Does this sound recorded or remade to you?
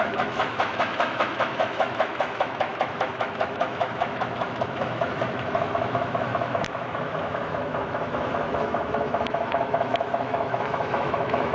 remade